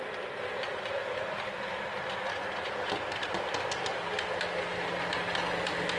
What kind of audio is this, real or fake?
real